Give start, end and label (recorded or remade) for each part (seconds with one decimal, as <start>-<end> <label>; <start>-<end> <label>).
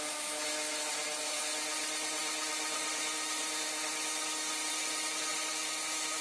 0.0-6.2 recorded